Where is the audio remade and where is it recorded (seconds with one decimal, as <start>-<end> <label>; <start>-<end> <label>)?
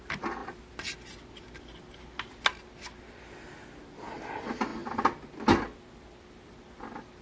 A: 0.0-7.2 recorded